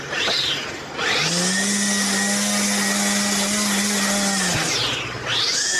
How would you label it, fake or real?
real